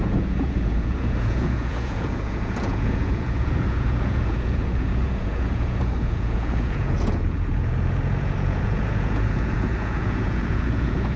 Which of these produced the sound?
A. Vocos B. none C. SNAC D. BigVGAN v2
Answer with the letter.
A